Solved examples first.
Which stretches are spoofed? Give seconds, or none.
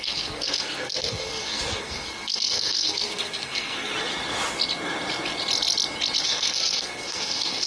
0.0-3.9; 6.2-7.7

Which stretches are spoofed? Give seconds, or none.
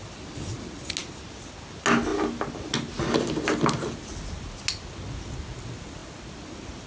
none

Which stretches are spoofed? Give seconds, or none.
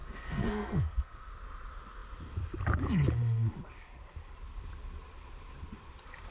0.0-1.3